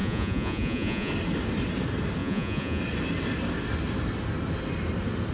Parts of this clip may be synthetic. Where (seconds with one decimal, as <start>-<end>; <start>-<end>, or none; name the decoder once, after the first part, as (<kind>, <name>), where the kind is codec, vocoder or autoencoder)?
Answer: 0.0-1.1 (vocoder, Vocos); 2.2-2.8